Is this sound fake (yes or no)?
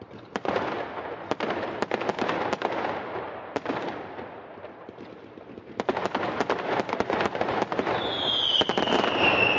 no